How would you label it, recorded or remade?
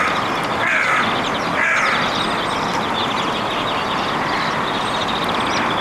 recorded